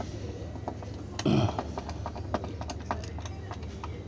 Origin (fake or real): real